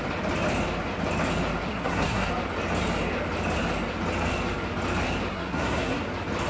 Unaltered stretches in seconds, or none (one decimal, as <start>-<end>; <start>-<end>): 0.0-1.7; 2.3-5.3; 6.0-6.5